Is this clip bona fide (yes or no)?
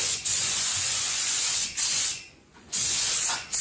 no